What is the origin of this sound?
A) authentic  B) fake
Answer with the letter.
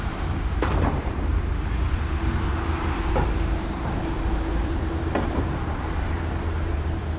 B